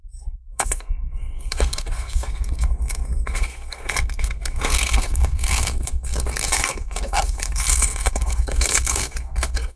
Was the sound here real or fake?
fake